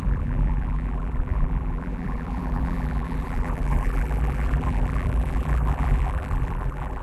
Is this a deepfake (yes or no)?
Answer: yes